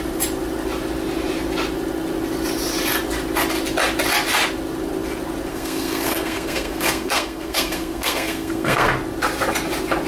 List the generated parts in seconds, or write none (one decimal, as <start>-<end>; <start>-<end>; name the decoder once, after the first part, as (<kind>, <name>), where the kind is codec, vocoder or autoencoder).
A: 5.5-8.9 (codec, SNAC)